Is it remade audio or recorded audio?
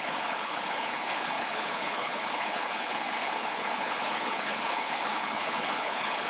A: remade